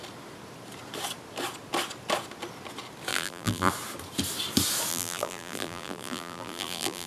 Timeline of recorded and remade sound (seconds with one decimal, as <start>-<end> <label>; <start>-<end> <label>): 0.0-3.1 recorded; 3.1-3.7 remade; 3.7-4.9 recorded; 4.9-7.1 remade